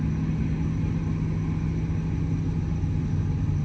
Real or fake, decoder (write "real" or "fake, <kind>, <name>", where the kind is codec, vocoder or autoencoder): real